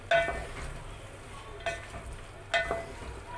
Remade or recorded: recorded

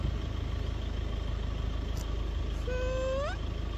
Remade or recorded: recorded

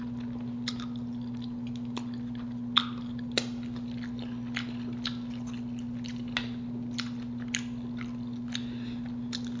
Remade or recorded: recorded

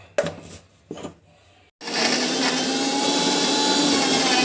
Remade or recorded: recorded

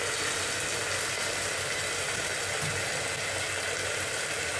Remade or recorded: recorded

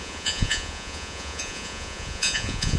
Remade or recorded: remade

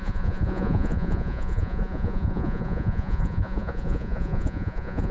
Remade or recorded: remade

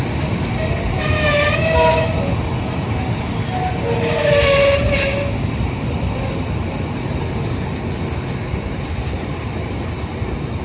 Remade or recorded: recorded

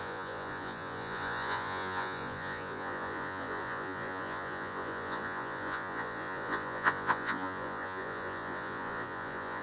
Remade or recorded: remade